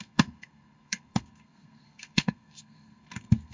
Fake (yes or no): yes